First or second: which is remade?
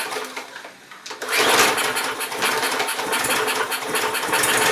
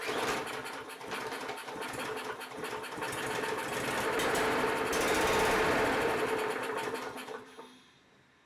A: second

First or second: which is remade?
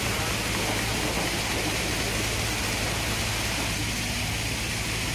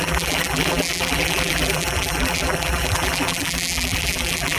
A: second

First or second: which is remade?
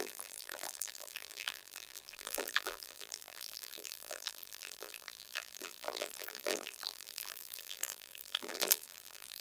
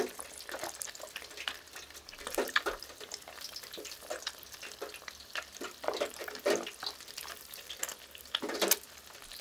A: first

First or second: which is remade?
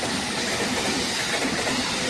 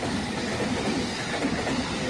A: first